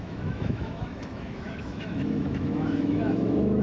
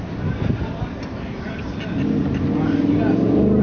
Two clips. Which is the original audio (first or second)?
second